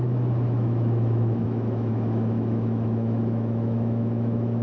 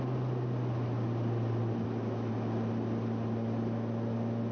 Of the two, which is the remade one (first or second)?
first